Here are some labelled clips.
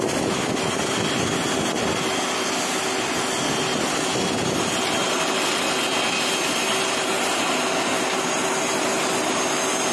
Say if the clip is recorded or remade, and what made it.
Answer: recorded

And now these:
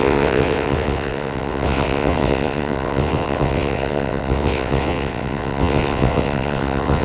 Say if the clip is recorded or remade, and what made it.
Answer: remade, vocoder, WaveNeXt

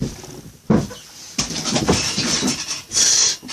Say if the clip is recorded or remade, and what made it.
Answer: recorded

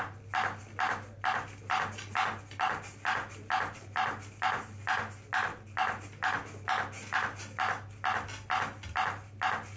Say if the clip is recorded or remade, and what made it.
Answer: recorded